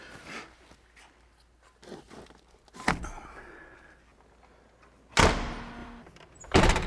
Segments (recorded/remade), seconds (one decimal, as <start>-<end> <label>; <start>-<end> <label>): 0.0-5.8 recorded; 5.8-6.9 remade